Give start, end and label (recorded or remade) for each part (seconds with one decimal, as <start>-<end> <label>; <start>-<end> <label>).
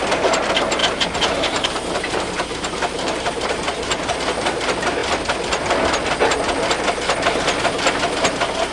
0.0-0.8 recorded; 0.8-4.2 remade; 4.2-8.7 recorded